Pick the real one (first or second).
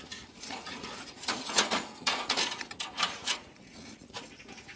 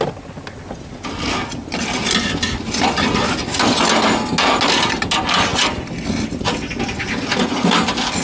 second